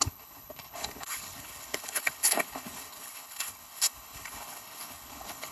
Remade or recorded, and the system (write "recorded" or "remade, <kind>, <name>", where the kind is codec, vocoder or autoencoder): remade, codec, HILCodec